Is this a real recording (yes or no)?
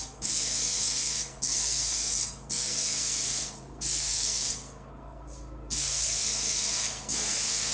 no